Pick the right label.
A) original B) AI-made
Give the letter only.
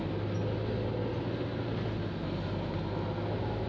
A